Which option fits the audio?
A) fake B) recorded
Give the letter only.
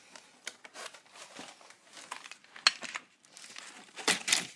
B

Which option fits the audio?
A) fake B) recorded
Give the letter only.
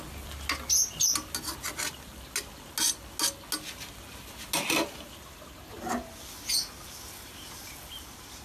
B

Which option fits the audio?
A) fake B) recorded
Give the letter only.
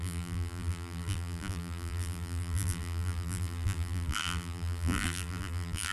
A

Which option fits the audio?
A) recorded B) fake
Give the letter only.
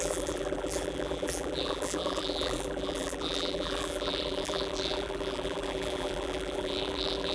B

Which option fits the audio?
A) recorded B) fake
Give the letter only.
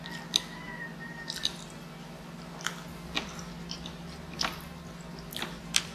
A